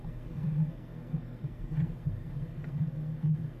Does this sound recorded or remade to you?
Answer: remade